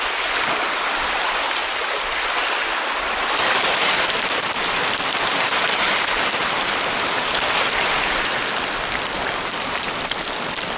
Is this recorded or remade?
recorded